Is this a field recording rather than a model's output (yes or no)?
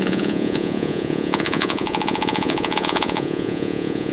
no